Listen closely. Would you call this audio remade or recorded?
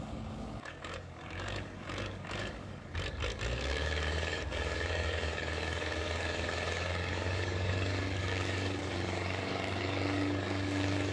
remade